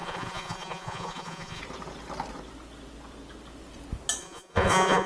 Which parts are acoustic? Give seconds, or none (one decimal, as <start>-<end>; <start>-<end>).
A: 1.6-4.2